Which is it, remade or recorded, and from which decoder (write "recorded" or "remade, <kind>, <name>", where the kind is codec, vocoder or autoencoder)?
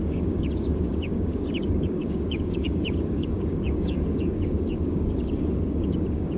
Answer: remade, codec, DAC